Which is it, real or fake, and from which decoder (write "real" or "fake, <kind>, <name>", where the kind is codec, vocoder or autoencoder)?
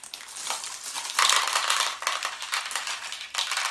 real